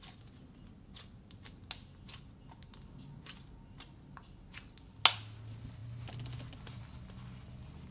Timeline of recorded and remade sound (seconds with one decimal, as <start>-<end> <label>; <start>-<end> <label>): 0.0-7.9 recorded